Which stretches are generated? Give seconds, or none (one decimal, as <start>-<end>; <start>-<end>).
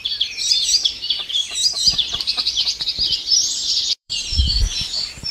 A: 0.0-5.3